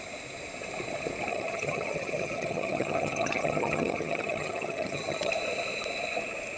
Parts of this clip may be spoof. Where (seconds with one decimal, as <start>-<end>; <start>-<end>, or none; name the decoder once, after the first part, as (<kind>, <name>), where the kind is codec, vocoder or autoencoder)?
1.3-5.3 (vocoder, HiFi-GAN)